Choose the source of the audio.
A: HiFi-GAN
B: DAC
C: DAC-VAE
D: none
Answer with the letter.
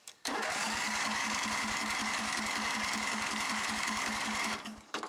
B